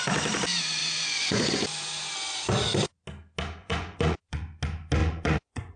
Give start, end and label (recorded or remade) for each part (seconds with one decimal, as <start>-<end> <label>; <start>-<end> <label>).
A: 0.0-0.8 recorded; 0.8-1.5 remade; 1.5-3.6 recorded; 3.6-4.4 remade; 4.4-5.0 recorded; 5.0-5.8 remade